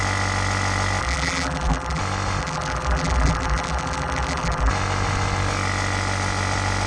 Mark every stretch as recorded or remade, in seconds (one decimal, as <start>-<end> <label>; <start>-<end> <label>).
0.0-1.0 recorded; 1.0-2.0 remade; 2.0-2.4 recorded; 2.4-4.7 remade; 4.7-6.9 recorded